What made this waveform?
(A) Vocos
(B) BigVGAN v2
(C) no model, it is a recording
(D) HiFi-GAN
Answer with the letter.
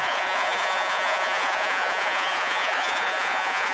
A